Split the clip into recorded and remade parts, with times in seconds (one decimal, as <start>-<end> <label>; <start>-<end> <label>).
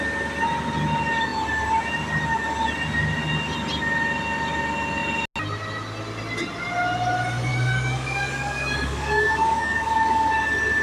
0.0-7.5 recorded; 7.5-10.3 remade; 10.3-10.8 recorded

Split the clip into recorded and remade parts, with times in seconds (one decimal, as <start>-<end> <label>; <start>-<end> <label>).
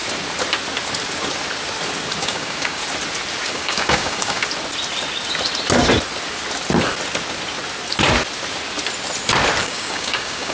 0.0-2.2 recorded; 2.2-2.8 remade; 2.8-3.5 recorded; 3.5-4.4 remade; 4.4-9.6 recorded; 9.6-10.5 remade